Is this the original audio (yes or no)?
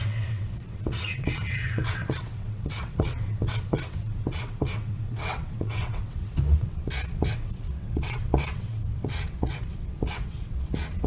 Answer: no